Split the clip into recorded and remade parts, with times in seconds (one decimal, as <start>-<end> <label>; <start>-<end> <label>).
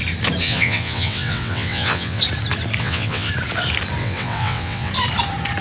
0.0-0.4 recorded; 0.4-2.2 remade; 2.2-2.8 recorded; 2.8-3.3 remade; 3.3-4.0 recorded; 4.0-4.9 remade; 4.9-5.6 recorded